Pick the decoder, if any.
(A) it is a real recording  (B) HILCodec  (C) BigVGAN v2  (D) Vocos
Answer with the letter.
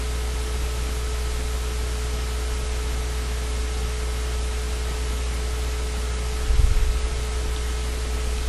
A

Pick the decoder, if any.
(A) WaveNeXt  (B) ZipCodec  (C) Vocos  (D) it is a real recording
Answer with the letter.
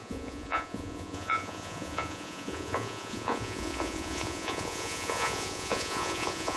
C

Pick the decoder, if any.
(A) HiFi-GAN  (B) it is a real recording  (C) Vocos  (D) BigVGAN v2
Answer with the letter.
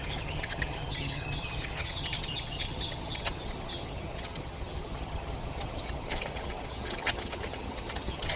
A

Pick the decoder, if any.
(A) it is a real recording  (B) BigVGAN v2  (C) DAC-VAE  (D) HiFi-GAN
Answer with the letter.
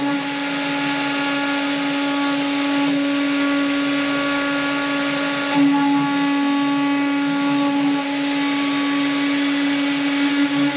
A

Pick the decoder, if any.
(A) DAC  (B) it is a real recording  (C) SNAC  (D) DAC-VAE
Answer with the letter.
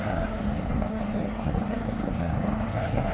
C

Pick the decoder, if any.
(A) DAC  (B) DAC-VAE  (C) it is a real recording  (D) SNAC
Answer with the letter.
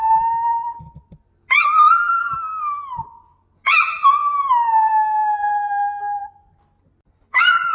C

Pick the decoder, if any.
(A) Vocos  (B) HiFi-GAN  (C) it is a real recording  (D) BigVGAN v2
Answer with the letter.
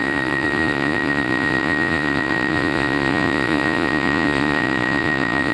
A